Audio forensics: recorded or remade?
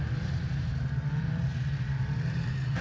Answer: remade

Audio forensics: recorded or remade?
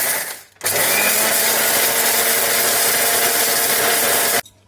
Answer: recorded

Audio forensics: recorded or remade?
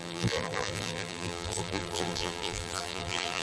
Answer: remade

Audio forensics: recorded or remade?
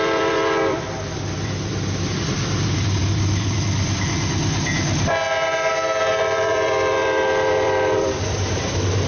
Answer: remade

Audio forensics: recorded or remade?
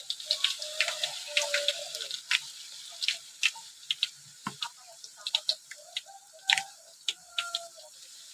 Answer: remade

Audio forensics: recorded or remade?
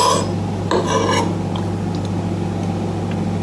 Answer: recorded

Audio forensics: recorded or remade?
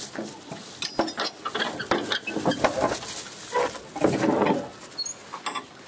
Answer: recorded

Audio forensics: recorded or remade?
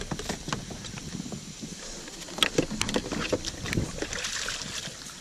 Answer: recorded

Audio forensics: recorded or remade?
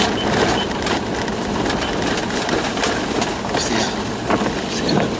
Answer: recorded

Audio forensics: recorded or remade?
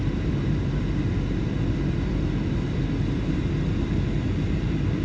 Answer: recorded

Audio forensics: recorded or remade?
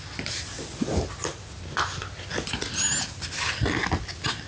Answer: recorded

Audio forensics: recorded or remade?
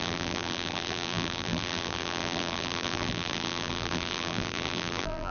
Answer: remade